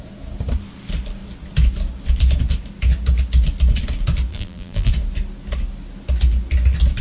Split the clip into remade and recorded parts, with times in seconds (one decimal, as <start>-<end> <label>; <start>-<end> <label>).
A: 0.0-4.3 recorded; 4.3-4.9 remade; 4.9-7.0 recorded